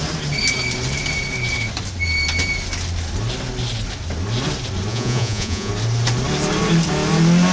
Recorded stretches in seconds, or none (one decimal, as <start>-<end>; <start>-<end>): 0.0-4.9; 5.7-7.5